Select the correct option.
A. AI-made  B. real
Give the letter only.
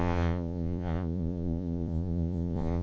A